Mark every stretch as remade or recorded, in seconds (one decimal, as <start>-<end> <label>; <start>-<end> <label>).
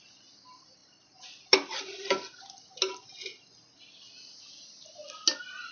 0.0-5.7 recorded